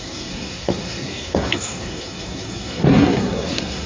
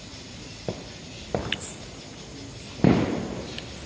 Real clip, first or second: second